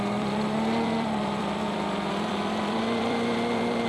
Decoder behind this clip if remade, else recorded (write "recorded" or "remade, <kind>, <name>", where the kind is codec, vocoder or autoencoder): remade, vocoder, BigVGAN v2